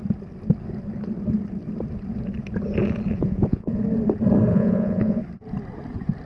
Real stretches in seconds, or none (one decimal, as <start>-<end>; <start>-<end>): 0.0-3.1; 3.8-4.5; 5.2-6.3